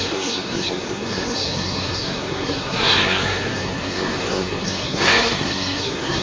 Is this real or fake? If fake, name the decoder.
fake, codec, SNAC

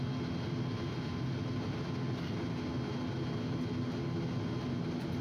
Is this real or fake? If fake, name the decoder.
real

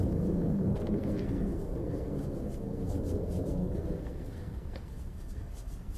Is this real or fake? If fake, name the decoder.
fake, codec, SNAC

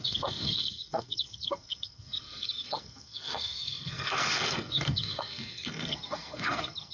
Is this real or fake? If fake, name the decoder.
fake, codec, SNAC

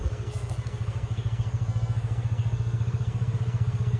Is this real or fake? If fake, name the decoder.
fake, codec, SNAC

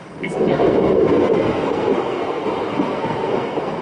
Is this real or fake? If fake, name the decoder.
fake, codec, SNAC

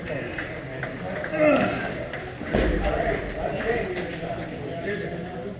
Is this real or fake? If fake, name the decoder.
real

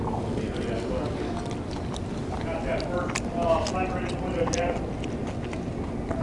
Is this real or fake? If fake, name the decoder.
real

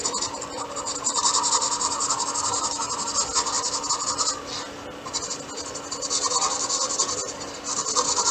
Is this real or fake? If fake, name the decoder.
real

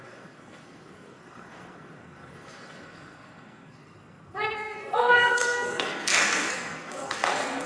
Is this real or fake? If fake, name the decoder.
fake, codec, SNAC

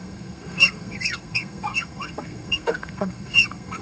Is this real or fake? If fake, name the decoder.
fake, codec, SNAC